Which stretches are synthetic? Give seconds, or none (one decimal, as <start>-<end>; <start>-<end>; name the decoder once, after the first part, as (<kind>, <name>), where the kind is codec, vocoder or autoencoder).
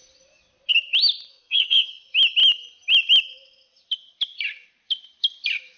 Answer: 1.3-1.9 (codec, SNAC)